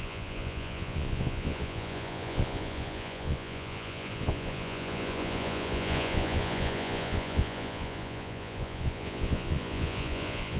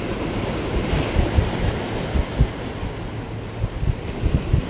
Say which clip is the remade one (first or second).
first